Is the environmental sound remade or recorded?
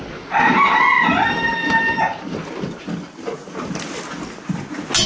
recorded